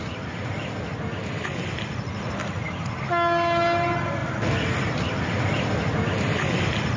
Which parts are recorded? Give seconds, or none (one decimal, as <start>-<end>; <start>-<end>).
0.0-7.0